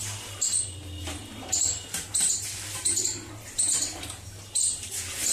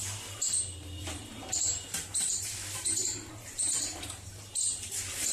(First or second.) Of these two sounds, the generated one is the second